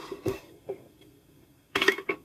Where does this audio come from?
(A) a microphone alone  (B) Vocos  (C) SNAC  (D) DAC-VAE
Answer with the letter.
C